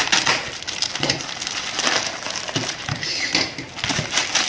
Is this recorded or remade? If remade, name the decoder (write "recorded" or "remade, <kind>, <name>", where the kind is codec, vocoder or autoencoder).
remade, vocoder, BigVGAN v2